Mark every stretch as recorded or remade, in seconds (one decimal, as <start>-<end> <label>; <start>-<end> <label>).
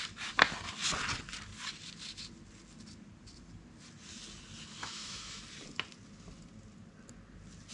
0.0-4.8 recorded; 4.8-5.4 remade; 5.4-7.7 recorded